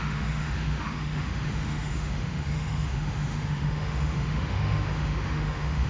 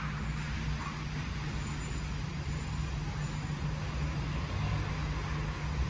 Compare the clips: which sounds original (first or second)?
second